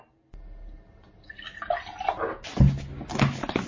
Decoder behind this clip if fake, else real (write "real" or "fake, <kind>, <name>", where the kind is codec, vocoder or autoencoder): real